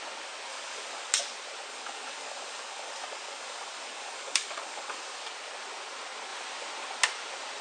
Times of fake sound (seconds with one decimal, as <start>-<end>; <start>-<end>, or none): 0.5-1.2; 1.7-5.3